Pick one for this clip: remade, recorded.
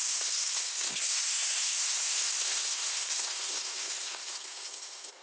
remade